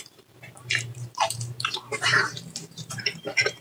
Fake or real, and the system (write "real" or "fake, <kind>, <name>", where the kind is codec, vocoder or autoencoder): fake, vocoder, BigVGAN v2